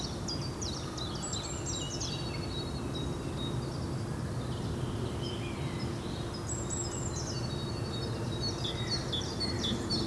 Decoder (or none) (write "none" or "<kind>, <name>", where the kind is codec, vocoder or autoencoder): none